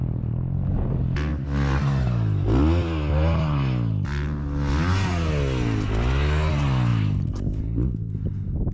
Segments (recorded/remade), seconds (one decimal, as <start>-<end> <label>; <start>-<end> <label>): 0.0-6.9 recorded; 6.9-8.7 remade